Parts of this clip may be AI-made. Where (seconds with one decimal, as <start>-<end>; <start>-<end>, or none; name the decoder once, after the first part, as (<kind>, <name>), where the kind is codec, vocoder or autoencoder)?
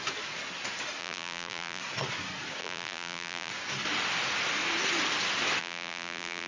1.0-1.8 (vocoder, BigVGAN v2); 2.6-3.5; 5.6-6.5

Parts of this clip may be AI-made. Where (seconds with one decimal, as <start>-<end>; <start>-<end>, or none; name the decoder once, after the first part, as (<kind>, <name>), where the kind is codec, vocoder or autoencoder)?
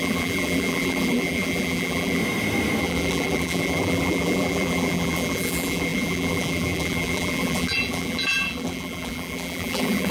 0.0-2.2 (vocoder, BigVGAN v2); 2.8-10.1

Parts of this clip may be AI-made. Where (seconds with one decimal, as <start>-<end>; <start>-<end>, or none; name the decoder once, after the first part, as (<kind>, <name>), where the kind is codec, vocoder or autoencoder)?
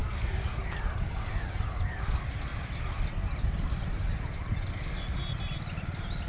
0.6-2.5 (vocoder, BigVGAN v2); 4.7-6.3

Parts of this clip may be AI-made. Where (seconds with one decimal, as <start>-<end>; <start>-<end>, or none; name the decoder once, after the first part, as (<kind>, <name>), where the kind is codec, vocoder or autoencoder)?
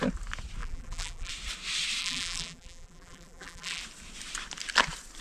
0.6-1.3 (vocoder, BigVGAN v2); 2.0-3.8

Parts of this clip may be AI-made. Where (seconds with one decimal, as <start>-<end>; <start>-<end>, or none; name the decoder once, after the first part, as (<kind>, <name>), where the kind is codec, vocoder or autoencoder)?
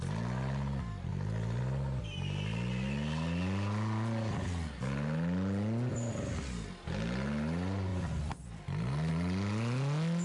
1.1-1.6 (vocoder, BigVGAN v2); 7.9-9.1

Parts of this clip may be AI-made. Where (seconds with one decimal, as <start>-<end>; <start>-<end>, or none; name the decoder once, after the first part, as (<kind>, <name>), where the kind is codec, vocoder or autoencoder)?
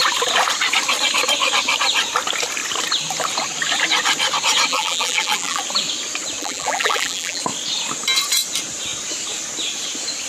4.7-5.6 (vocoder, BigVGAN v2); 6.4-7.4